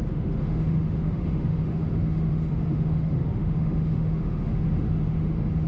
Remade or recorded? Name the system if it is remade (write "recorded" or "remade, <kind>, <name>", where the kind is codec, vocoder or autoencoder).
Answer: remade, autoencoder, DAC-VAE